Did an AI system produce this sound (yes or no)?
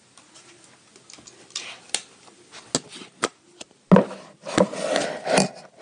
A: no